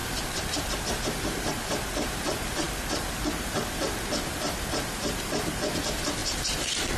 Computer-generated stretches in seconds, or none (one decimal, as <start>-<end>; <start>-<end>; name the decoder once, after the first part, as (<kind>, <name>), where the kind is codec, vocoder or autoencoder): 0.0-7.0 (vocoder, BigVGAN v2)